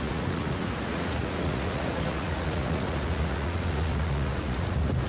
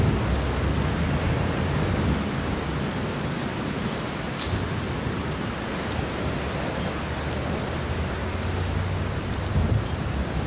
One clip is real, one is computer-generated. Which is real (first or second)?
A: second